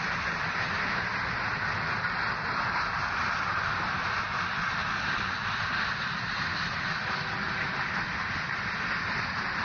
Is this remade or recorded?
recorded